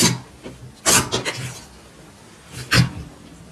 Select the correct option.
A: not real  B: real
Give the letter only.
B